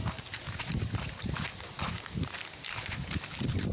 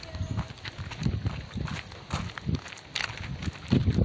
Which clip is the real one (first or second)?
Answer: second